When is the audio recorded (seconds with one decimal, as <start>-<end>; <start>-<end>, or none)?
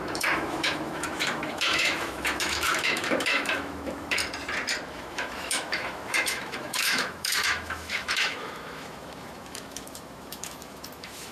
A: 4.2-4.9